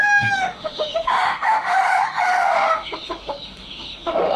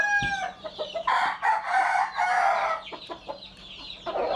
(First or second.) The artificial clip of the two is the first